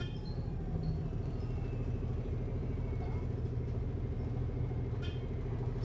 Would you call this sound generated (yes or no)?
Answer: no